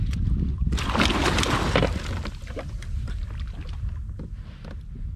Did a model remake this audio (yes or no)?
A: no